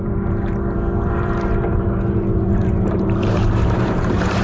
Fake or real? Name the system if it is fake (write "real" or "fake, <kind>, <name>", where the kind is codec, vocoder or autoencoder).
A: fake, vocoder, BigVGAN v2